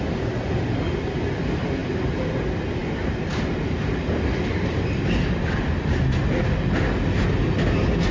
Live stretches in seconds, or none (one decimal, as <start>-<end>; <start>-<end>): 0.0-8.1